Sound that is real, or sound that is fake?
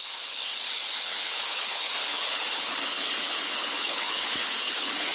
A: fake